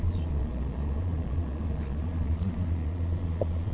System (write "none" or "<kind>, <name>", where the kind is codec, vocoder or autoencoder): vocoder, Vocos